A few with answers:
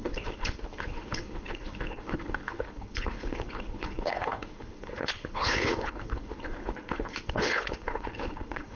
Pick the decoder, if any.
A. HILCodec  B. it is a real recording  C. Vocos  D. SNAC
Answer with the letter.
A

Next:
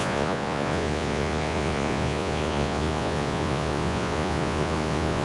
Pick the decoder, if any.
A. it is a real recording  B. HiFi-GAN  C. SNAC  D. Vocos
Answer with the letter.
D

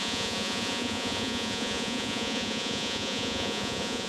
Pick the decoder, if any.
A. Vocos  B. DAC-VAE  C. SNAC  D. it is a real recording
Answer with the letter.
A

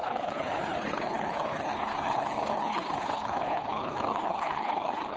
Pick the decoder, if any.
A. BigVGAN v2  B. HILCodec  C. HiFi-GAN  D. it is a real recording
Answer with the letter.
B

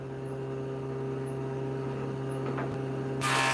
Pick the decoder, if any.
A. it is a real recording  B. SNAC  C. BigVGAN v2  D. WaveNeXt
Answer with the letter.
A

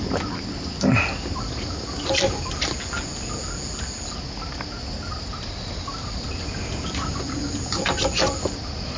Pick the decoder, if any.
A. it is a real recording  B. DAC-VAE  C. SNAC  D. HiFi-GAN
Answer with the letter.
A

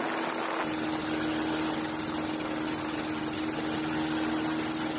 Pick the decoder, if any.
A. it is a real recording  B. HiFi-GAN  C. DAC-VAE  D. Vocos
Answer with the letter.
A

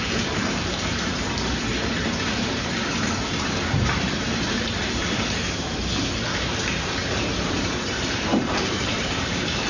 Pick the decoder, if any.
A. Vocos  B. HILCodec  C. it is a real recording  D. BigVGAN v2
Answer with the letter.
D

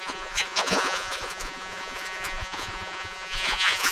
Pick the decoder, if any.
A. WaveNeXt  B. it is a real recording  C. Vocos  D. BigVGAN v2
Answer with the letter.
C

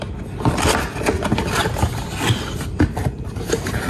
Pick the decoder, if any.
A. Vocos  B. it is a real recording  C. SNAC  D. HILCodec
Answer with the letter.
B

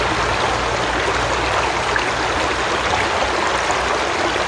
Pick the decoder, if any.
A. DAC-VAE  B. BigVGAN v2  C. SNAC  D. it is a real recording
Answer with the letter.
D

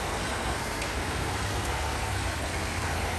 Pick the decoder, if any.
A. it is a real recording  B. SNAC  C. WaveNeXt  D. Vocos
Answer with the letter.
B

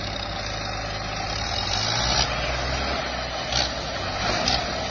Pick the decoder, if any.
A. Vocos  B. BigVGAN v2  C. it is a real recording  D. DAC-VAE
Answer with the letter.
C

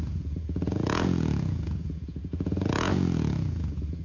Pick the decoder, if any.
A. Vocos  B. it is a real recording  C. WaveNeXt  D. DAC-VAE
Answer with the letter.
A